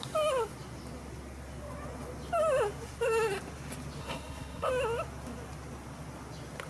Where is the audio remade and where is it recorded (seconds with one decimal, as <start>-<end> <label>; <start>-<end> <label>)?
0.0-4.0 recorded; 4.0-4.7 remade; 4.7-6.7 recorded